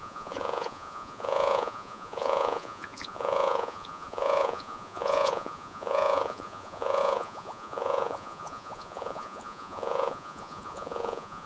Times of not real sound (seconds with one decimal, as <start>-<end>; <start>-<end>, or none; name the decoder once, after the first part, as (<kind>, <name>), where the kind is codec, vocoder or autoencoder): 0.0-11.5 (vocoder, Vocos)